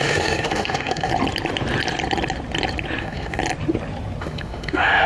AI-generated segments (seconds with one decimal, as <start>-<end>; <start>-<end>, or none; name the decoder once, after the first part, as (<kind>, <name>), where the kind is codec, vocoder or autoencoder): 0.0-1.1 (autoencoder, DAC-VAE); 3.0-3.4; 4.2-5.1